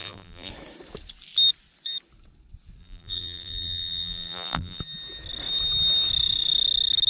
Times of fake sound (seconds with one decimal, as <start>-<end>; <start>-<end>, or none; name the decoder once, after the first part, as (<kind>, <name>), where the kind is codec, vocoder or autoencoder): 0.0-0.5 (vocoder, BigVGAN v2); 2.8-4.8